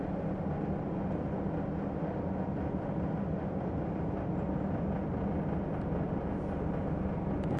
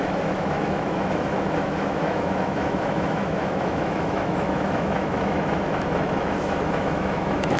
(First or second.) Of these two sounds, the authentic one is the first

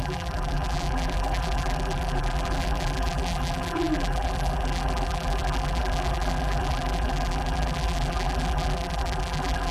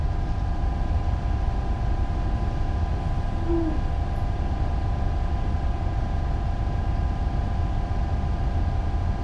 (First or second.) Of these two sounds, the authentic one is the second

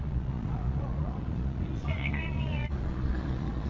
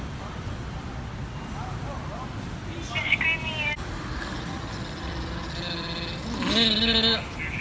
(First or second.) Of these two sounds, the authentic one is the second